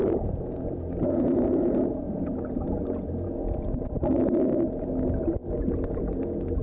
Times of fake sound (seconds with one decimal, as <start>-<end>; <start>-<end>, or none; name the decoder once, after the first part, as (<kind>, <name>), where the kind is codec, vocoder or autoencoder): 0.0-3.9 (vocoder, Vocos)